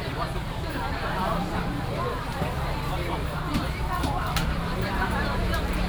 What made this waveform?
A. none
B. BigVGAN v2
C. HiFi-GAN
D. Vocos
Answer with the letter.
B